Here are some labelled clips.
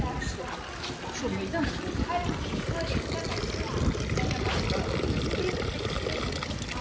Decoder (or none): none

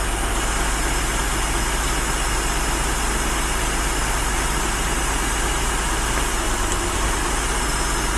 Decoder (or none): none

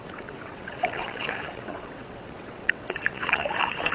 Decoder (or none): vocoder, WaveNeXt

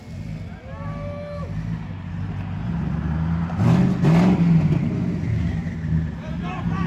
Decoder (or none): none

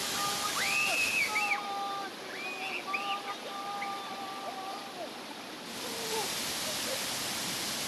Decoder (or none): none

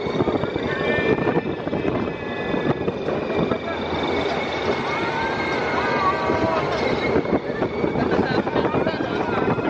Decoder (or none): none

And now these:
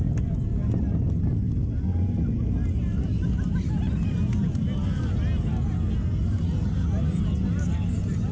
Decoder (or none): none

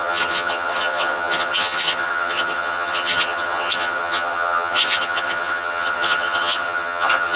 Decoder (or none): vocoder, HiFi-GAN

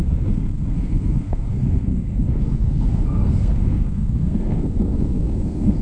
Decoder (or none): codec, SNAC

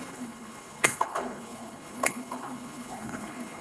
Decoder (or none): codec, HILCodec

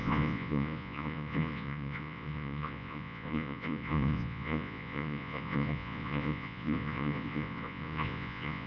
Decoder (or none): vocoder, Vocos